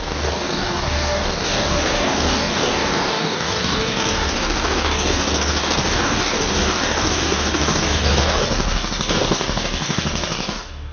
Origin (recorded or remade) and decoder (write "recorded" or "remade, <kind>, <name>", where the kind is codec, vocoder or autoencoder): remade, codec, DAC